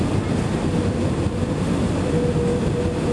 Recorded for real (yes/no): yes